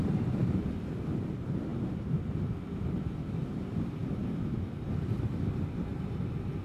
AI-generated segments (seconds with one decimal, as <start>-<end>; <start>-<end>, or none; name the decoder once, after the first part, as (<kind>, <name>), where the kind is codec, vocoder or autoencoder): 0.0-0.4 (vocoder, BigVGAN v2); 1.0-1.7; 2.6-4.0; 4.6-5.9